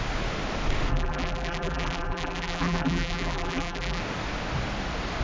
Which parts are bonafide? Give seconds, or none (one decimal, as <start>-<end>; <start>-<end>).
0.0-0.9; 4.0-5.2